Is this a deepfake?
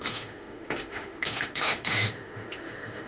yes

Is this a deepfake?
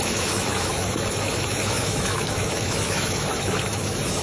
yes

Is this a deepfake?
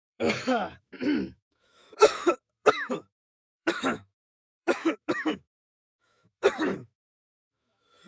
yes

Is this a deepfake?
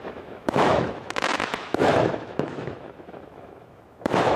yes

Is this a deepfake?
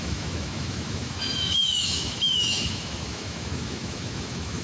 yes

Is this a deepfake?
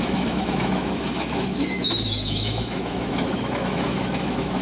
yes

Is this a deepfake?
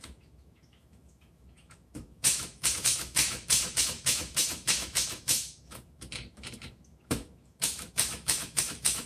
yes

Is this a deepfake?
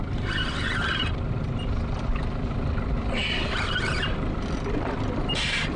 no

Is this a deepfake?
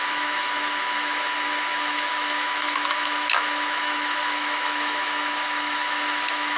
yes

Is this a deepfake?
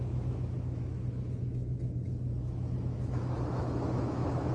yes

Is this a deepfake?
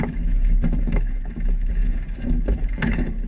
yes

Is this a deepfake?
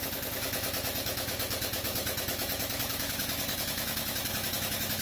yes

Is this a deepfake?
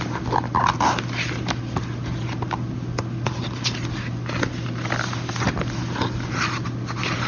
no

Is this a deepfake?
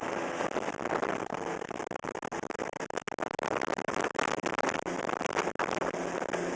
no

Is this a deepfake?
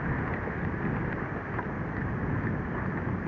no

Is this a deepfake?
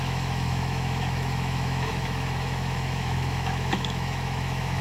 yes